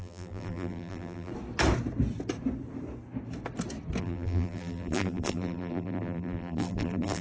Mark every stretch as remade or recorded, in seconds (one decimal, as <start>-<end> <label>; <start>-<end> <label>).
0.0-1.3 remade; 1.3-4.0 recorded; 4.0-7.2 remade